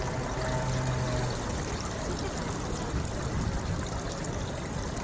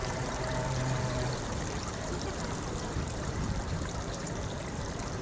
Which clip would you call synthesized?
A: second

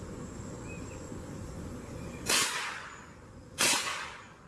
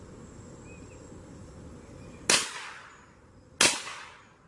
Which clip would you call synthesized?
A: first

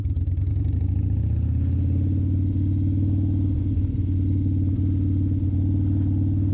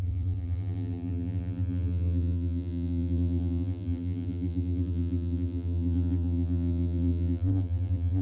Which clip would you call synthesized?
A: second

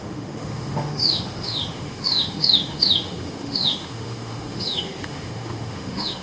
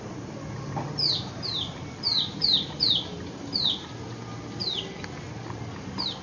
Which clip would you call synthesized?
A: first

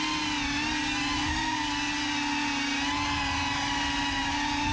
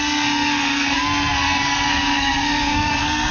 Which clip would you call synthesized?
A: second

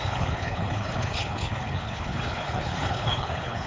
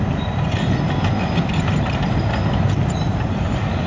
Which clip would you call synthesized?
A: first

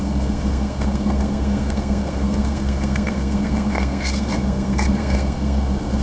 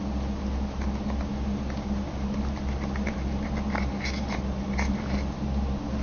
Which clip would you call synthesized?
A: first